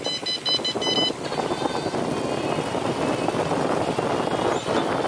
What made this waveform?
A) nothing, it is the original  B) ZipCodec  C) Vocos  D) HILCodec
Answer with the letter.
A